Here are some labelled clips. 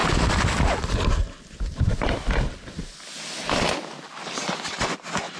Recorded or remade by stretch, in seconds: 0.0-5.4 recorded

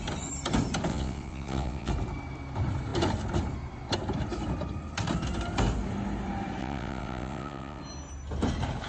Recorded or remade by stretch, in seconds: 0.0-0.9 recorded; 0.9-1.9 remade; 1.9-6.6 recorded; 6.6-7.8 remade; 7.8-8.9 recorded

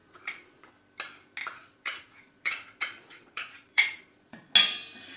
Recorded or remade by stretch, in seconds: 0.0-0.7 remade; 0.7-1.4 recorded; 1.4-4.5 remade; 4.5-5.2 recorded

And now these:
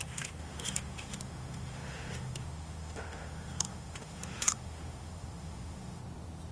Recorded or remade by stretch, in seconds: 0.0-6.0 remade; 6.0-6.5 recorded

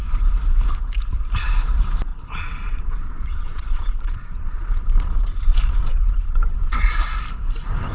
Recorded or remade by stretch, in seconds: 0.0-2.1 recorded; 2.1-6.8 remade; 6.8-7.9 recorded

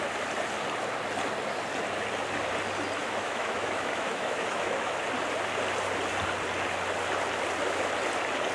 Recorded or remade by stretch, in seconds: 0.0-3.0 recorded; 3.0-5.0 remade; 5.0-8.5 recorded

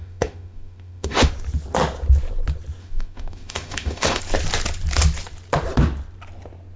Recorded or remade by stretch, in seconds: 0.0-1.3 remade; 1.3-2.8 recorded; 2.8-4.2 remade; 4.2-6.8 recorded

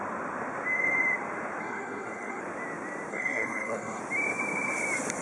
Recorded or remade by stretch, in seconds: 0.0-1.6 recorded; 1.6-2.4 remade; 2.4-3.1 recorded; 3.1-4.0 remade; 4.0-5.2 recorded